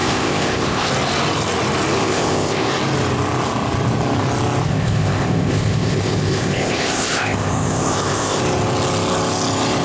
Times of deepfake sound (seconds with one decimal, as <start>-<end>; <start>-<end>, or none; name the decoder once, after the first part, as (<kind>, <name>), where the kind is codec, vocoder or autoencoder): 0.0-0.9 (codec, ZipCodec); 2.0-2.7; 4.7-8.4